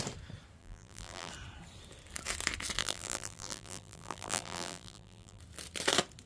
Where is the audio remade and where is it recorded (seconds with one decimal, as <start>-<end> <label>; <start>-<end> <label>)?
0.0-0.6 recorded; 0.6-1.3 remade; 1.3-2.8 recorded; 2.8-5.4 remade; 5.4-6.3 recorded